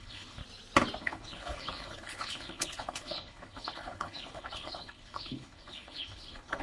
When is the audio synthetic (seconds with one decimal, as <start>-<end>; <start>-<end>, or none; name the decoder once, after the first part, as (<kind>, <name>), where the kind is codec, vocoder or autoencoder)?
0.0-0.4 (codec, HILCodec); 1.0-6.6